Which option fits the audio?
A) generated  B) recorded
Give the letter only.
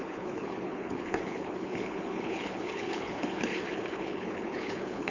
A